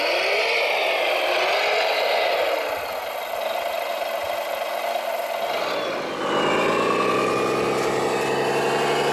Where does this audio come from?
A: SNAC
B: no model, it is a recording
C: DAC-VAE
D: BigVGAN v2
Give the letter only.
B